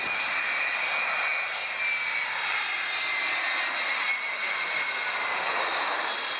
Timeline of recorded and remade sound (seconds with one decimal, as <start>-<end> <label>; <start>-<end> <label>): 0.0-6.4 recorded